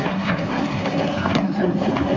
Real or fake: fake